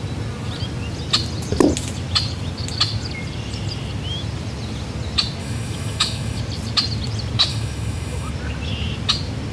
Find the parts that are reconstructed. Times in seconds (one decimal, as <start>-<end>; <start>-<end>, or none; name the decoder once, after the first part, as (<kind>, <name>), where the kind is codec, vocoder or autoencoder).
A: 5.4-6.4 (autoencoder, DAC-VAE); 7.5-8.3